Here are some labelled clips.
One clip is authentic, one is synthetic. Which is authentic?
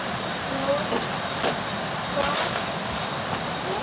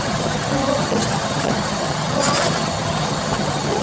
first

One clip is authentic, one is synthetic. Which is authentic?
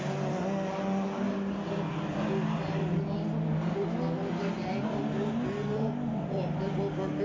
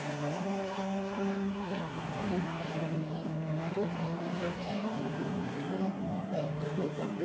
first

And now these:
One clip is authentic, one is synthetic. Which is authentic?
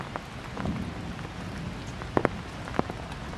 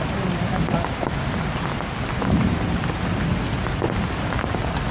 first